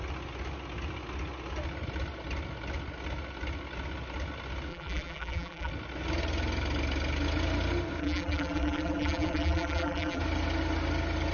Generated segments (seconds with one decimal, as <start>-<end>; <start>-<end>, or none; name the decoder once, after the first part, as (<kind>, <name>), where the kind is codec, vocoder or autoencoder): 4.7-5.7 (vocoder, BigVGAN v2); 8.0-10.2